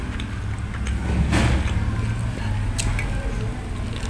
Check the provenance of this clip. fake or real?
real